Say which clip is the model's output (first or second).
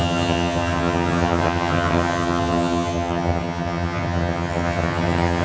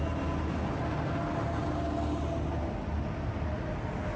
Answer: first